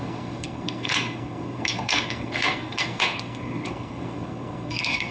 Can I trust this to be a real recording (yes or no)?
no